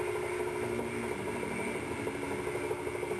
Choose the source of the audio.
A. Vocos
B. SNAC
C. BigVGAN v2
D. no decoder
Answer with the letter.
D